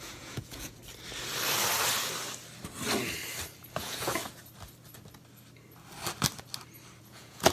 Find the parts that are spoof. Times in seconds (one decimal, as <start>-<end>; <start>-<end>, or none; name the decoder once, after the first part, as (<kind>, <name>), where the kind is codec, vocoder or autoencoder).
0.0-0.8 (vocoder, Vocos); 3.8-4.2; 7.0-7.5